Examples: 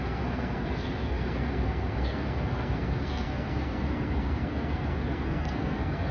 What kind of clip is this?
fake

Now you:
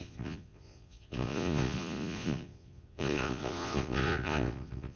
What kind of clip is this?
fake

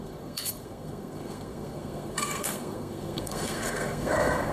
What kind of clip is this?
fake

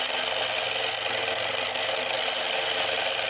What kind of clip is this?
real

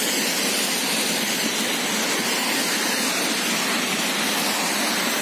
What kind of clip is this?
real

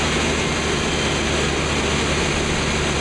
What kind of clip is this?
real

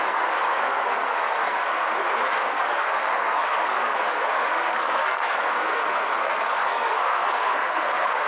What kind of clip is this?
fake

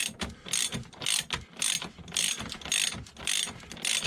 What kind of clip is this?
real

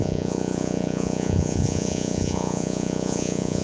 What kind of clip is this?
fake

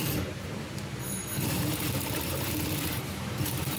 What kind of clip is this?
fake